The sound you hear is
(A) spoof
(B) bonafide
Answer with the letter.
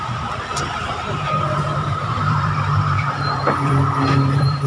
A